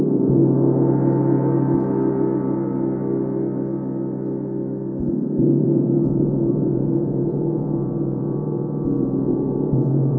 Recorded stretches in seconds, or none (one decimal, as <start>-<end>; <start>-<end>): 0.4-5.1